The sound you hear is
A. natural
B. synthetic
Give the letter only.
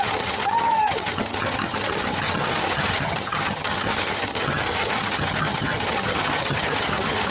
B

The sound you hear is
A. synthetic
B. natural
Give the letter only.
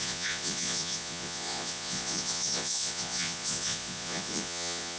A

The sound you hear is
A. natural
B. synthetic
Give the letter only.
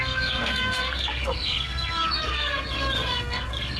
B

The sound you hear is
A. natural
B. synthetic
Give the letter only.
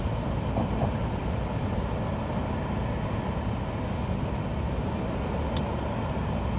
A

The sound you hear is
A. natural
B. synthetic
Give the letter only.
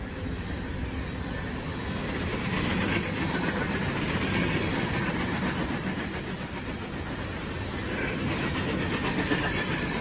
A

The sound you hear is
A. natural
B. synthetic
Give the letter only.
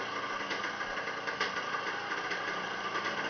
A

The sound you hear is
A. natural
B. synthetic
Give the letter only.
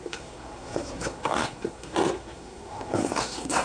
B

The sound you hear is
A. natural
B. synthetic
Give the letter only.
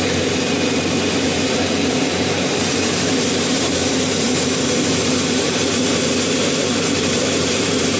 B